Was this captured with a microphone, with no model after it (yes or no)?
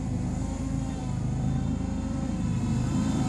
no